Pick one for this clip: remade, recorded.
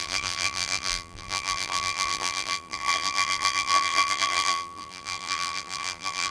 remade